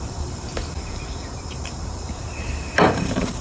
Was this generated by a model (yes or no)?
yes